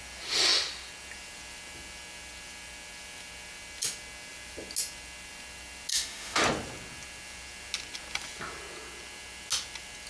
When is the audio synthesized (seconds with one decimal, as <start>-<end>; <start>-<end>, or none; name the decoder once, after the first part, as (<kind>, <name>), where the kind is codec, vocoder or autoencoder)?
5.9-6.4 (autoencoder, DAC-VAE)